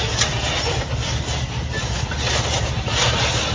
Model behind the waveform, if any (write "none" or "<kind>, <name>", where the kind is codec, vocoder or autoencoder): none